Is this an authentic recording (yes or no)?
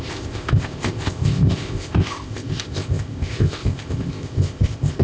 no